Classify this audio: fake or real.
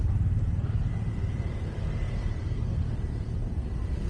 fake